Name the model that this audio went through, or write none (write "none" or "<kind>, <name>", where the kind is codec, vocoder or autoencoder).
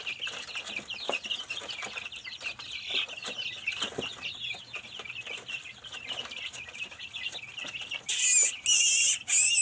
none